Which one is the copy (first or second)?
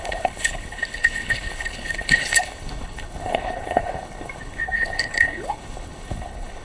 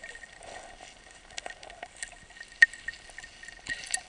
first